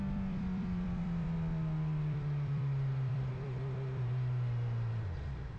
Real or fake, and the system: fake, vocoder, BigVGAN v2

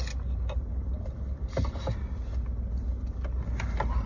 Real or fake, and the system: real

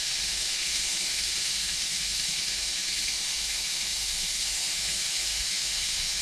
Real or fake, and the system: fake, autoencoder, DAC-VAE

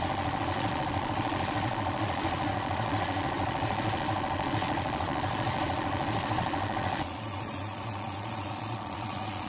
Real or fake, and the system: fake, vocoder, Vocos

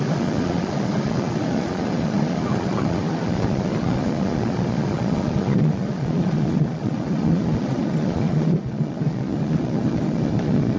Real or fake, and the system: fake, vocoder, Vocos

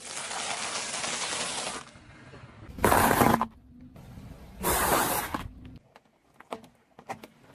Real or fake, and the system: real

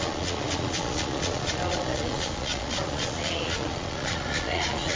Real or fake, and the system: fake, vocoder, Vocos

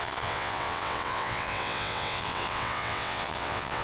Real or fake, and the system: fake, vocoder, WaveNeXt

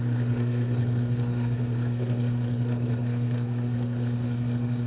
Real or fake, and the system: fake, codec, SNAC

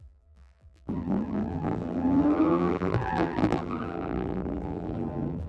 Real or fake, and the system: fake, vocoder, BigVGAN v2